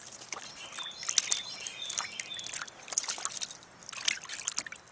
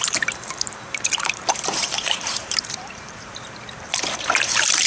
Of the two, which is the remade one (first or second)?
second